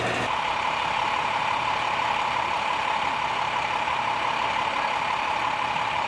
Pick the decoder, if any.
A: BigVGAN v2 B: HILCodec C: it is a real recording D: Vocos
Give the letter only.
A